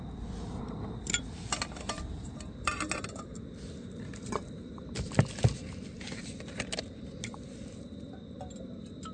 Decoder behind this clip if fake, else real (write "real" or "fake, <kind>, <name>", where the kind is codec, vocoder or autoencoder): real